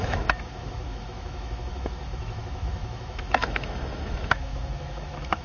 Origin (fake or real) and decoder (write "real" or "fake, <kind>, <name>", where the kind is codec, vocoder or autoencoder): fake, autoencoder, DAC-VAE